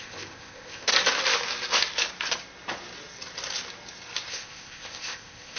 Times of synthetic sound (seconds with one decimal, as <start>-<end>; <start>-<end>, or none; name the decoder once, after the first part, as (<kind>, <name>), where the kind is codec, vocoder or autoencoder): 0.0-0.9 (codec, ZipCodec); 4.3-5.6